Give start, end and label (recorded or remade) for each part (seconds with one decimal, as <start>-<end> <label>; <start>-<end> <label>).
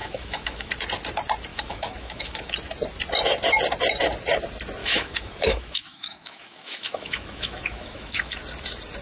0.0-0.7 remade; 0.7-1.5 recorded; 1.5-2.5 remade; 2.5-4.8 recorded; 4.8-8.4 remade; 8.4-9.0 recorded